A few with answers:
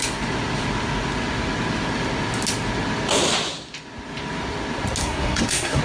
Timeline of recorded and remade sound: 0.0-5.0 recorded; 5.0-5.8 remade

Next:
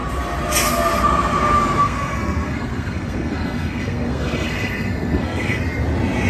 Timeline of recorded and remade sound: 0.0-1.8 recorded; 1.8-5.6 remade; 5.6-6.3 recorded

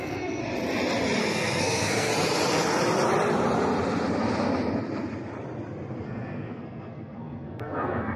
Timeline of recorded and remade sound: 0.0-0.4 remade; 0.4-1.2 recorded; 1.2-2.1 remade; 2.1-6.0 recorded; 6.0-8.2 remade

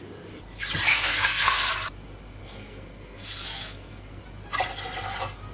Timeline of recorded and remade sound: 0.0-0.9 recorded; 0.9-1.7 remade; 1.7-2.4 recorded; 2.4-4.2 remade; 4.2-5.5 recorded

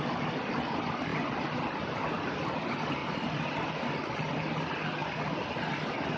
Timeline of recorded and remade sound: 0.0-6.2 recorded

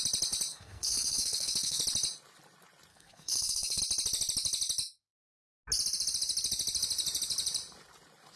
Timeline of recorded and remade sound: 0.0-0.5 recorded; 0.5-1.8 remade; 1.8-2.9 recorded; 2.9-3.8 remade; 3.8-8.4 recorded

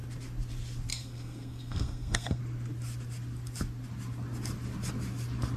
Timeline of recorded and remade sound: 0.0-0.9 recorded; 0.9-2.4 remade; 2.4-5.6 recorded

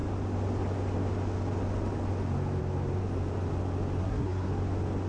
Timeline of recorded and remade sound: 0.0-4.0 recorded; 4.0-4.5 remade; 4.5-5.1 recorded